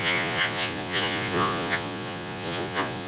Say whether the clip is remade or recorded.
remade